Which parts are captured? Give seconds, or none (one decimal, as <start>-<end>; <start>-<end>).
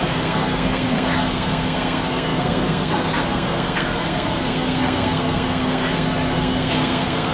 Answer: none